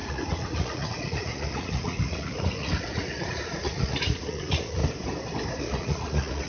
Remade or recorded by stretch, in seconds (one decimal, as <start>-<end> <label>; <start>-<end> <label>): 0.0-4.8 remade; 4.8-5.6 recorded; 5.6-6.5 remade